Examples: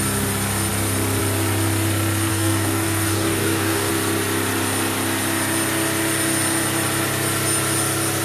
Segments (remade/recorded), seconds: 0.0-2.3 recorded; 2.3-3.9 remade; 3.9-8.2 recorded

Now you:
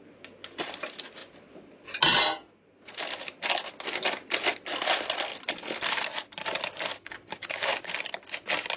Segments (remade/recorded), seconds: 0.0-6.9 recorded; 6.9-7.9 remade; 7.9-8.8 recorded

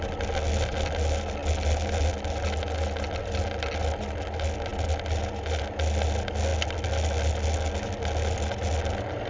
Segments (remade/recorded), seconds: 0.0-9.3 recorded

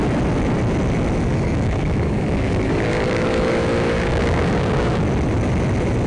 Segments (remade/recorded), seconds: 0.0-1.3 recorded; 1.3-5.0 remade; 5.0-6.1 recorded

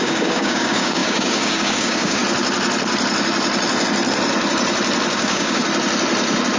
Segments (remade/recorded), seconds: 0.0-2.2 remade; 2.2-5.1 recorded; 5.1-5.6 remade; 5.6-6.6 recorded

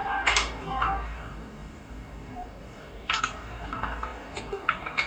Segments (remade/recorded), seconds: 0.0-5.1 remade

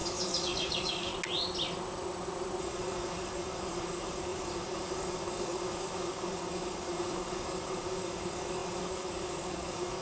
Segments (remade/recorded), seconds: 0.0-1.1 remade; 1.1-2.6 recorded; 2.6-10.0 remade

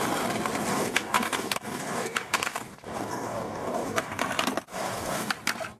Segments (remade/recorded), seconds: 0.0-0.7 recorded; 0.7-4.2 remade; 4.2-4.7 recorded; 4.7-5.3 remade; 5.3-5.8 recorded